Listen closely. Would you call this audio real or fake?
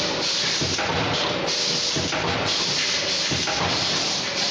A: real